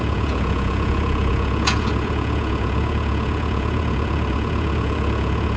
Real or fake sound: fake